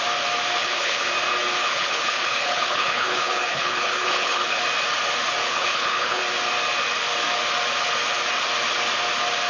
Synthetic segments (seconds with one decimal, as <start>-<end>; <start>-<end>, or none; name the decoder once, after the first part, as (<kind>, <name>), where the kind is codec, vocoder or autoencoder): 0.6-1.1 (codec, HILCodec); 1.6-4.6; 5.4-6.2